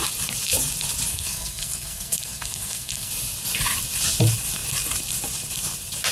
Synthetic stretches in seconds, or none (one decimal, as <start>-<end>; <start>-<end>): 1.1-3.1